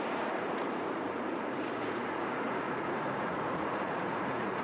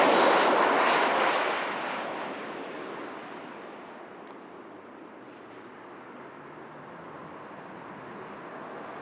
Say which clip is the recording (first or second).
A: second